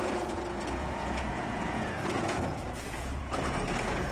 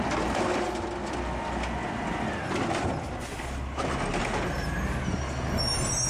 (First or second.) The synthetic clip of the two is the first